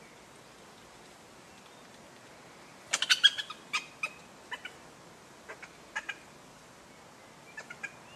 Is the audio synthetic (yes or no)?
no